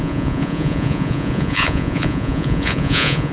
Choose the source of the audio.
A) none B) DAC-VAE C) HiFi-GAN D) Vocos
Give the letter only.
D